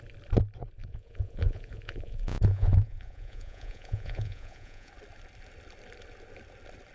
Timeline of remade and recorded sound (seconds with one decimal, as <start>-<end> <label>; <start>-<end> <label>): 0.0-0.8 recorded; 0.8-4.9 remade; 4.9-6.9 recorded